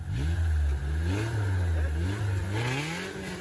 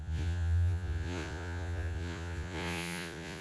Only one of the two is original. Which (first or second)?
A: first